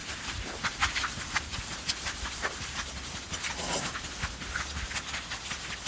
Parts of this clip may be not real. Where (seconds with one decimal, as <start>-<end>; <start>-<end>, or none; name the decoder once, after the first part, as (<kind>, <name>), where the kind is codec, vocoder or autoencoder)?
0.0-3.5 (vocoder, BigVGAN v2)